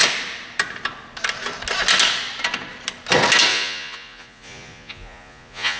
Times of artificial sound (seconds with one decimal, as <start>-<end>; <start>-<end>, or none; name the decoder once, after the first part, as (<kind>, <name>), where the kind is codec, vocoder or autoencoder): 3.5-5.8 (vocoder, Vocos)